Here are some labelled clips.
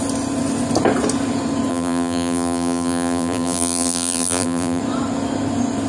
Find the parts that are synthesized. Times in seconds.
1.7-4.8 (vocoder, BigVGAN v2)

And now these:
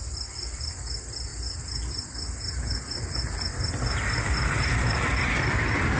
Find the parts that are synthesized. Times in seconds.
0.0-1.3 (vocoder, BigVGAN v2); 3.7-6.0